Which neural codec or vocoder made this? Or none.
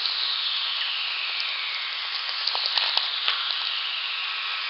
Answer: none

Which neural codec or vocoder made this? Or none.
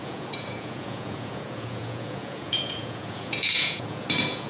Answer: vocoder, Vocos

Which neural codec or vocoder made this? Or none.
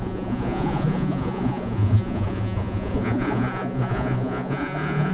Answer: vocoder, Vocos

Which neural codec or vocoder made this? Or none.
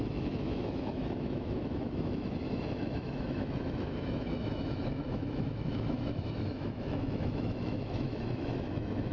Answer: autoencoder, DAC-VAE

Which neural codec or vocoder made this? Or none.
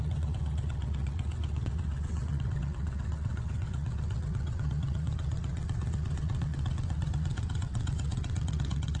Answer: vocoder, WaveNeXt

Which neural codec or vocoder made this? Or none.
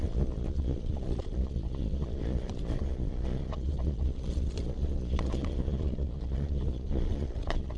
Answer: vocoder, Vocos